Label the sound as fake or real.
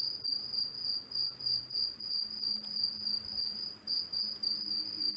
real